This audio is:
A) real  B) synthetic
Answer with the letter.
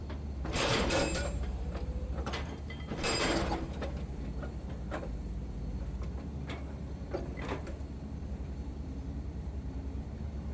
B